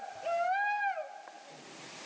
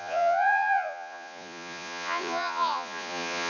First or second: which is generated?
second